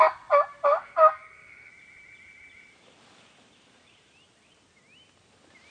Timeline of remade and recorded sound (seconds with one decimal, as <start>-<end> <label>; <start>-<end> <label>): 0.0-0.8 recorded; 0.8-1.7 remade; 1.7-5.7 recorded